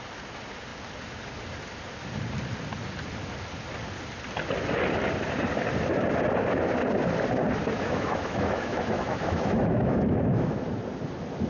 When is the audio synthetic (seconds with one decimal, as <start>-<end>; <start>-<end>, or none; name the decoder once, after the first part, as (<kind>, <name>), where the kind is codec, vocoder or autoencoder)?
7.6-10.7 (autoencoder, DAC-VAE)